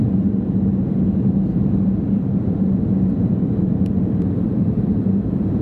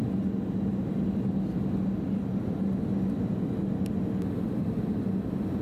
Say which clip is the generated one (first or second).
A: first